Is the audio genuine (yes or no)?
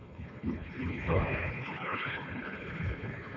no